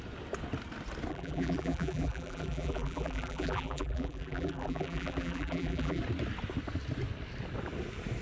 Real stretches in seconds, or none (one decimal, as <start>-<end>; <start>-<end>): 0.0-1.1; 6.0-8.2